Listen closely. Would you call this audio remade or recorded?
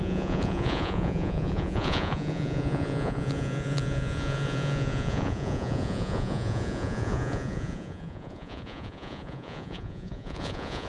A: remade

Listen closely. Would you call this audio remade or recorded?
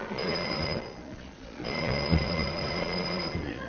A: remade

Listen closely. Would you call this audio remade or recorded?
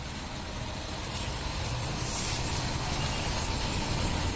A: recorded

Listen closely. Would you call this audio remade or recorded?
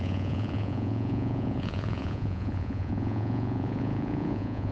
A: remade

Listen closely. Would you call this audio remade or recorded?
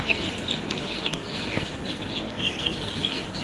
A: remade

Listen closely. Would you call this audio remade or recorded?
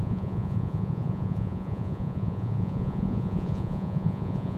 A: remade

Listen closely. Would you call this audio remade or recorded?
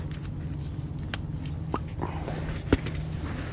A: recorded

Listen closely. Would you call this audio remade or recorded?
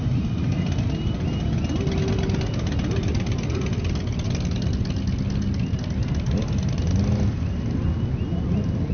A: recorded